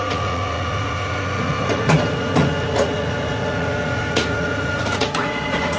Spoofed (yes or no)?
yes